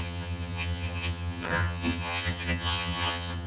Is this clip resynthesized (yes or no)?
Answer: yes